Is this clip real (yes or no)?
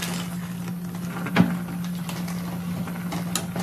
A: yes